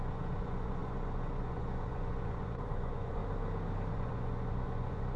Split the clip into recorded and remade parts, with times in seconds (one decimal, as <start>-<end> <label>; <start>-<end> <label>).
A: 0.0-3.2 remade; 3.2-3.9 recorded; 3.9-5.2 remade